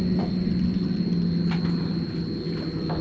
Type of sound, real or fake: real